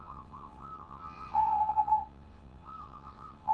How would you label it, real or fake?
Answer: fake